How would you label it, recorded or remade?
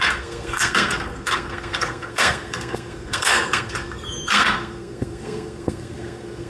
remade